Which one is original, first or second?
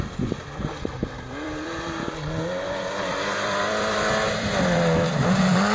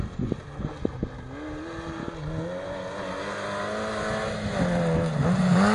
second